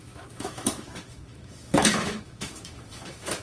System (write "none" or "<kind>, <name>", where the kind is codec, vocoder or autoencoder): autoencoder, DAC-VAE